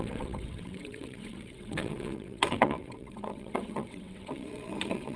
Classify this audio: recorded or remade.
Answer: remade